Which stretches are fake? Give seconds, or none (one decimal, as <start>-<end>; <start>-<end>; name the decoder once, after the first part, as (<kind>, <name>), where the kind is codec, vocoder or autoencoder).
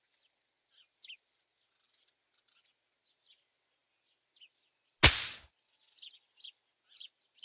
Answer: none